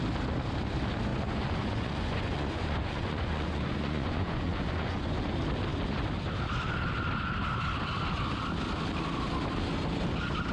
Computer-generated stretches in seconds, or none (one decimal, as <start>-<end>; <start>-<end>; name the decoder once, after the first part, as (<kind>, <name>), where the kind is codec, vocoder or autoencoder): 1.1-5.3 (vocoder, Vocos)